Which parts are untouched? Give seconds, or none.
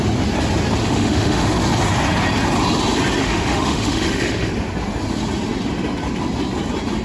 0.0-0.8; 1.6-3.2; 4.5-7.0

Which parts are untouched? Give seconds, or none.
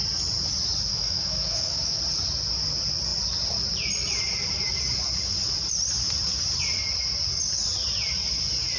0.0-0.9; 2.0-8.8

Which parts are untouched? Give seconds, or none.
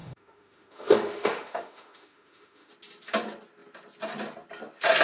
2.7-5.0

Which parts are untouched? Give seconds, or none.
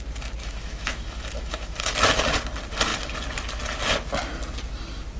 0.0-0.4; 1.9-5.2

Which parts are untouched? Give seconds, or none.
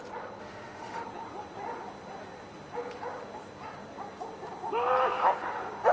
0.0-0.4; 1.0-5.9